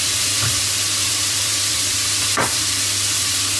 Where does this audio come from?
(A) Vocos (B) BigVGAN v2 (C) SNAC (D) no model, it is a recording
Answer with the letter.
B